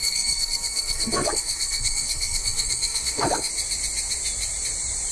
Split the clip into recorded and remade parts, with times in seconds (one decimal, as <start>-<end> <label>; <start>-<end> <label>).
0.0-3.5 remade; 3.5-5.1 recorded